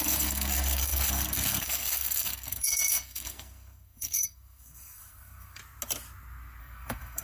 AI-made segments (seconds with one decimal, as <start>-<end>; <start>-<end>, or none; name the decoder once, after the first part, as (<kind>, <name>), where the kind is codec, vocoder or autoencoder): 0.0-5.6 (codec, SNAC); 6.6-7.2